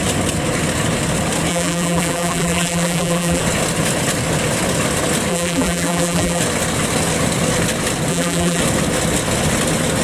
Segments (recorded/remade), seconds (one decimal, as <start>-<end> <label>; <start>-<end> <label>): 0.0-1.5 recorded; 1.5-3.4 remade; 3.4-5.3 recorded; 5.3-6.4 remade; 6.4-8.1 recorded; 8.1-8.6 remade; 8.6-10.0 recorded